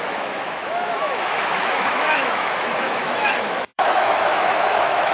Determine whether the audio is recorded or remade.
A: remade